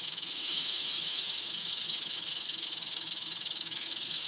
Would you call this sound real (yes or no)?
no